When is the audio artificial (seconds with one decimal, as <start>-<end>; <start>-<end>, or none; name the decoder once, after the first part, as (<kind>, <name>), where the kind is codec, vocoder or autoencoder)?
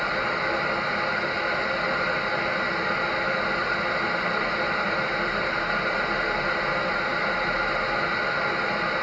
none